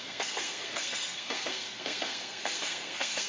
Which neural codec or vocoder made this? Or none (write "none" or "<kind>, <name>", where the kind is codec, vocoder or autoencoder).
codec, SNAC